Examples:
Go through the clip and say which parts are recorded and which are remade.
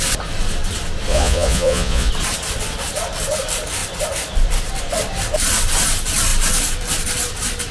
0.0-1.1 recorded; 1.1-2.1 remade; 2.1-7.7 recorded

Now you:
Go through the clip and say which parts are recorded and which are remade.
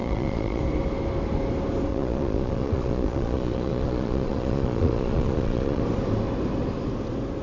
0.0-0.6 remade; 0.6-1.9 recorded; 1.9-5.8 remade; 5.8-7.4 recorded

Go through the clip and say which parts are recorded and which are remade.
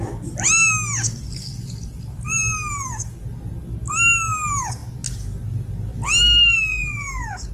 0.0-6.7 recorded; 6.7-7.5 remade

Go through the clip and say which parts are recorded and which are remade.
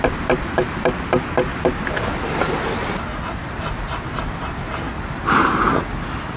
0.0-6.4 recorded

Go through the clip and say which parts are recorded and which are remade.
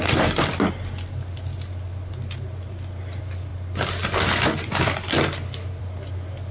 0.0-6.5 recorded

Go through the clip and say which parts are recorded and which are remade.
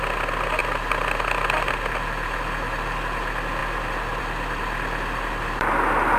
0.0-6.2 recorded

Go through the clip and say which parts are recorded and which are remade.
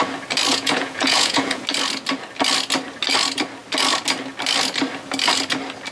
0.0-0.5 recorded; 0.5-1.6 remade; 1.6-5.9 recorded